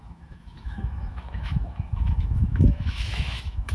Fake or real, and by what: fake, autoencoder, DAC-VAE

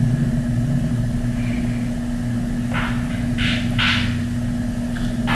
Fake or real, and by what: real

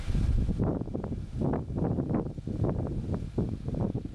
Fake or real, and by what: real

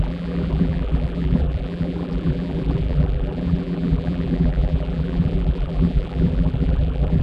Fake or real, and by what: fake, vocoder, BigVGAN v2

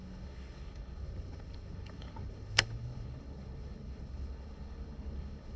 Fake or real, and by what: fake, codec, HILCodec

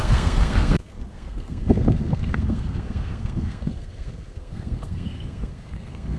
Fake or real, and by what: fake, codec, SNAC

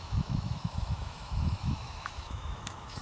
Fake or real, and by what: fake, autoencoder, DAC-VAE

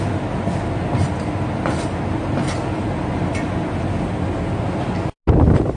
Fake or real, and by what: real